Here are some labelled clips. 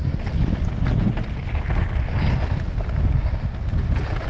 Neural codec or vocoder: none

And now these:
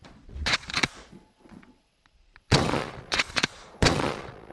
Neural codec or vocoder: vocoder, Vocos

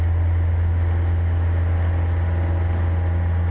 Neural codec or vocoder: none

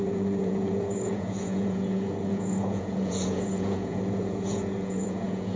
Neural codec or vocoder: vocoder, Vocos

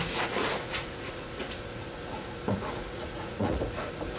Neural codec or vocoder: vocoder, Vocos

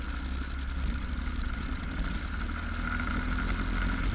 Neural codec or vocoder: none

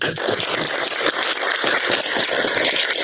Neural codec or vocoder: none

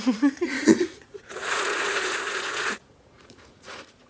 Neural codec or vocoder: vocoder, Vocos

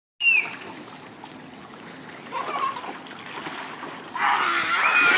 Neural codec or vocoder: none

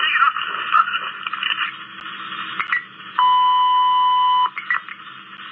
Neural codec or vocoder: none